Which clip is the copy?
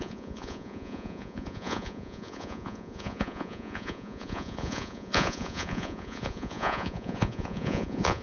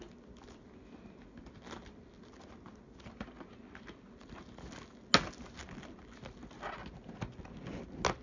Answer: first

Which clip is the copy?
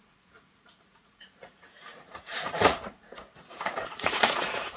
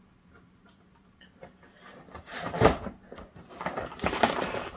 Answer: first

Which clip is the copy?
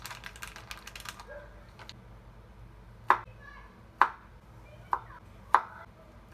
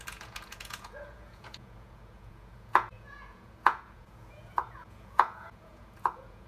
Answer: second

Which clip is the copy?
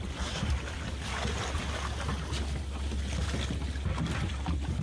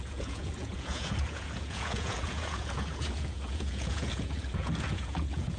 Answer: second